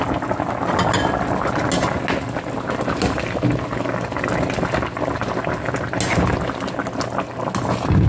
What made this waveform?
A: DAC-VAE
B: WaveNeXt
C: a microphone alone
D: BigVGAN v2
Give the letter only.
C